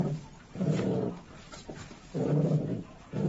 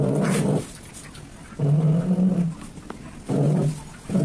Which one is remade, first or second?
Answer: first